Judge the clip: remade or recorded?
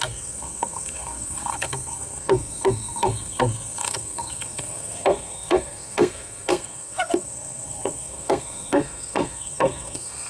remade